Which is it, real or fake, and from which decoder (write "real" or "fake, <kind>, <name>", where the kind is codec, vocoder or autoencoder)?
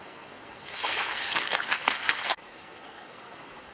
fake, codec, SNAC